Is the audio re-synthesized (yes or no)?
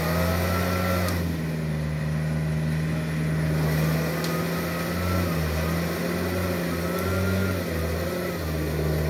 no